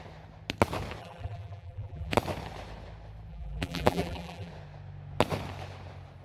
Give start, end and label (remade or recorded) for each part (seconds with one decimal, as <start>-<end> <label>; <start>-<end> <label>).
0.0-1.0 recorded; 1.0-2.1 remade; 2.1-3.3 recorded; 3.3-4.5 remade; 4.5-6.2 recorded